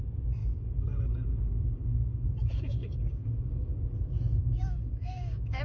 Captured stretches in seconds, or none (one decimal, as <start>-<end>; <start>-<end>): 0.0-0.4; 3.8-4.4